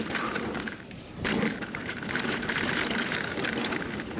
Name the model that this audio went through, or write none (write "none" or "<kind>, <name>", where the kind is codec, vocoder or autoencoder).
vocoder, BigVGAN v2